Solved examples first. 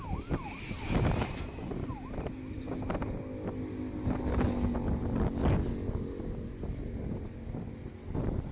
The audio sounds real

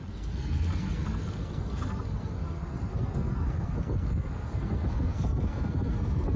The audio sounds fake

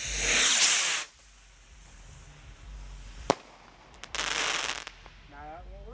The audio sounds real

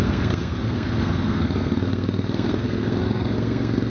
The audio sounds fake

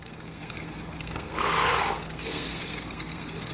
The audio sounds fake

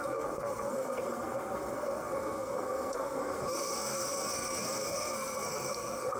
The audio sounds fake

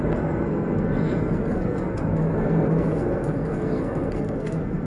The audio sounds fake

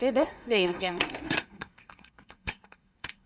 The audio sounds fake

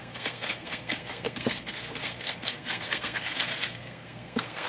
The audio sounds fake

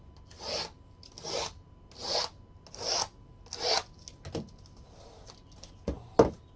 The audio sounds real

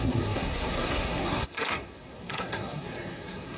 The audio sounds fake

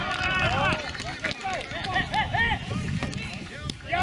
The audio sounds real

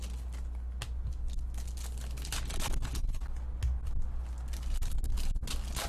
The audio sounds real